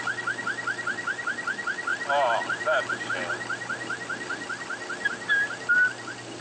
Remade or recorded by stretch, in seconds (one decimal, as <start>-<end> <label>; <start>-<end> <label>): 0.0-6.4 recorded